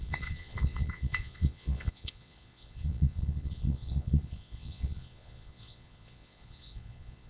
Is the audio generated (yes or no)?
yes